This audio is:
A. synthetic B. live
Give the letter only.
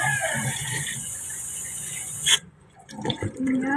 A